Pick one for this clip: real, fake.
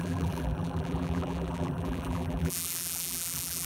fake